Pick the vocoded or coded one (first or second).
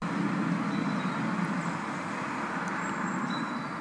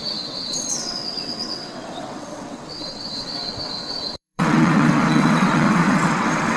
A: second